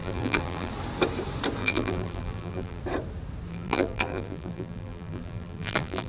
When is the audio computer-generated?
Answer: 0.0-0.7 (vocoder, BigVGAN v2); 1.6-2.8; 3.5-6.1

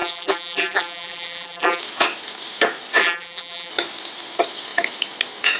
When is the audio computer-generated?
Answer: 0.0-1.8 (vocoder, BigVGAN v2); 3.0-3.7

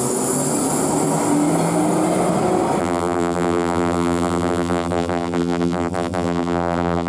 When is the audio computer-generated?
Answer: 2.8-7.1 (vocoder, BigVGAN v2)

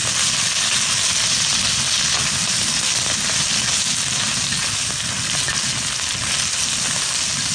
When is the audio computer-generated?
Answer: none

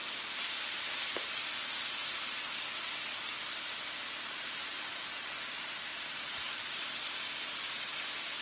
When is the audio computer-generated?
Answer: 0.0-1.3 (vocoder, BigVGAN v2); 3.4-7.3